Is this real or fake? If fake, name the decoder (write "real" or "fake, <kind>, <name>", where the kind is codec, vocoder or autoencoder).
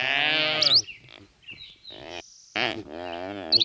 real